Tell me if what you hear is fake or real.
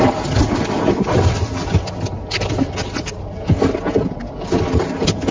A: real